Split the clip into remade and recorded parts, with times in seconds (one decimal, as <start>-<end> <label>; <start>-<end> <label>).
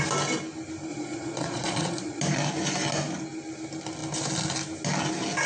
0.0-0.9 recorded; 0.9-2.2 remade; 2.2-5.5 recorded